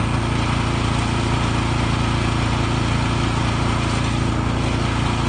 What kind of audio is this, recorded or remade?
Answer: recorded